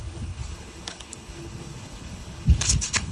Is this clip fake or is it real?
fake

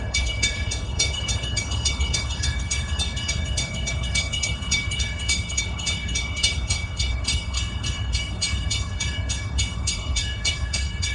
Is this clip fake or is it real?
fake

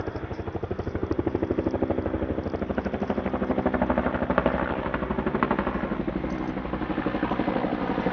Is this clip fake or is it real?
real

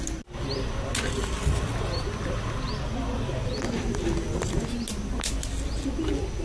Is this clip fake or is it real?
real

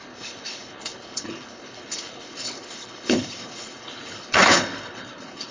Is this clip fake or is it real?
fake